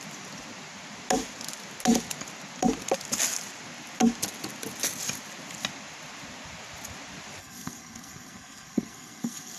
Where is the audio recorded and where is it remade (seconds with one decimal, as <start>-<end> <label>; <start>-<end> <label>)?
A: 0.0-7.4 recorded; 7.4-9.6 remade